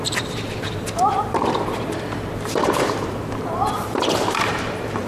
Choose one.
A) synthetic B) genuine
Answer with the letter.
A